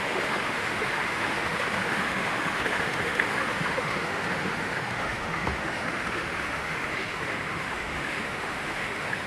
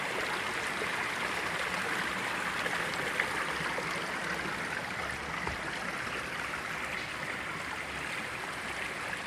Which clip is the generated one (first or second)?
first